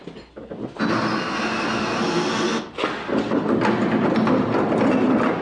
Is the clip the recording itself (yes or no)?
yes